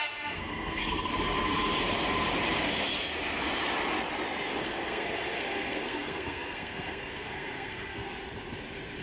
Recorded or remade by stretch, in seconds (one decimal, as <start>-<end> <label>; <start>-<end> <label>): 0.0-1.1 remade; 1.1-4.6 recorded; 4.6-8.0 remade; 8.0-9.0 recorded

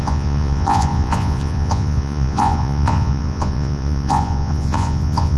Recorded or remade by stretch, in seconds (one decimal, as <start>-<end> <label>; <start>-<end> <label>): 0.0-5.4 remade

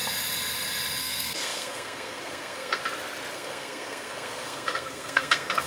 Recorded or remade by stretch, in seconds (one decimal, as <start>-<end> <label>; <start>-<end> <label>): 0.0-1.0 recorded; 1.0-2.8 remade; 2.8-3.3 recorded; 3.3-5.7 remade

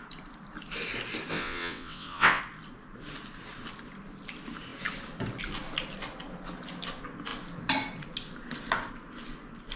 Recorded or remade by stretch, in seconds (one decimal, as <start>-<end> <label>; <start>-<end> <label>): 0.0-1.3 recorded; 1.3-2.4 remade; 2.4-9.8 recorded

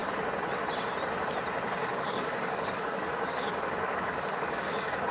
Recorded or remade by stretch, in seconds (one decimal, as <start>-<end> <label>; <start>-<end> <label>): 0.0-1.8 recorded; 1.8-5.1 remade

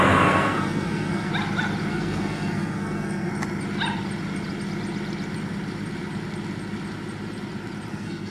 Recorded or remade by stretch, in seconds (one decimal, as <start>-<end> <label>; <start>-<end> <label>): 0.0-1.3 remade; 1.3-1.9 recorded; 1.9-3.3 remade; 3.3-7.9 recorded; 7.9-8.3 remade

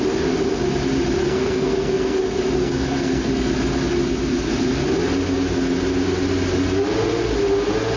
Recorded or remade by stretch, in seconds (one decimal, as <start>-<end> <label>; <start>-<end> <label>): 0.0-1.2 recorded; 1.2-2.2 remade; 2.2-2.6 recorded; 2.6-3.3 remade; 3.3-8.0 recorded